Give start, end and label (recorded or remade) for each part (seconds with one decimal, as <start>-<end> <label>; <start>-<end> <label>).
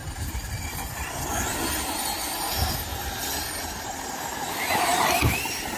0.0-5.8 recorded